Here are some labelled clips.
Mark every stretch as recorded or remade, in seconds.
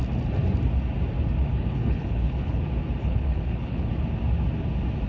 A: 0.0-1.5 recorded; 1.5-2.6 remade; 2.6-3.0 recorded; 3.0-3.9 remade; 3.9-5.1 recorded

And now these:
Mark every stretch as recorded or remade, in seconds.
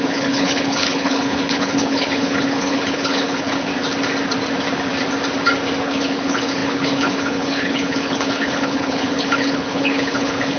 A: 0.0-3.7 remade; 3.7-5.8 recorded; 5.8-10.6 remade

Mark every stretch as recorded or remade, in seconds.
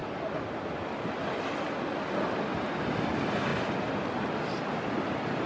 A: 0.0-5.5 recorded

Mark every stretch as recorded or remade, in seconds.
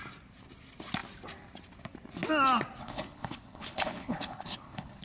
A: 0.0-2.8 recorded; 2.8-5.0 remade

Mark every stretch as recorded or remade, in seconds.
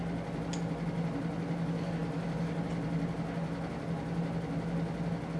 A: 0.0-5.4 recorded